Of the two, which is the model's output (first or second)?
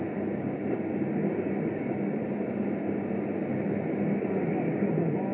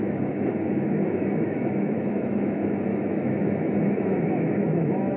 second